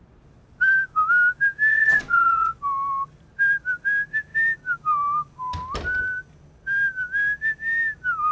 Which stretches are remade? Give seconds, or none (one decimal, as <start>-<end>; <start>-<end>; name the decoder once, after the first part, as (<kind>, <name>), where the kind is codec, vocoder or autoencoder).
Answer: 1.7-2.6 (vocoder, Vocos)